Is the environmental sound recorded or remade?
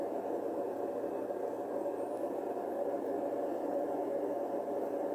recorded